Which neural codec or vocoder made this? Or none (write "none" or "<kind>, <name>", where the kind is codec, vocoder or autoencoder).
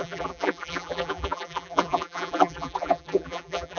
vocoder, BigVGAN v2